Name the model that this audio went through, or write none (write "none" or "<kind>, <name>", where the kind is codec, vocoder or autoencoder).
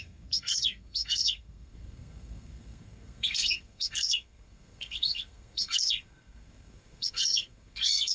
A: codec, SNAC